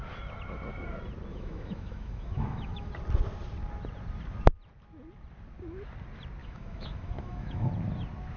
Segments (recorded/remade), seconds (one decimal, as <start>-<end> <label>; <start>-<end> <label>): 0.0-1.3 recorded; 1.3-2.9 remade; 2.9-6.4 recorded; 6.4-7.7 remade; 7.7-8.4 recorded